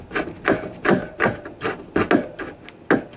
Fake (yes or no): no